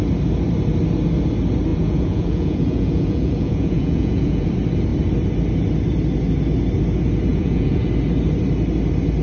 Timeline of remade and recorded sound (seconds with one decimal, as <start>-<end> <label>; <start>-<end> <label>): 0.0-1.7 recorded; 1.7-4.5 remade; 4.5-7.3 recorded; 7.3-7.9 remade; 7.9-9.2 recorded